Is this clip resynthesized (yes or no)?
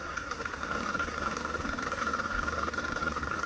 yes